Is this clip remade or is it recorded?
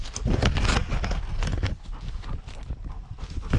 recorded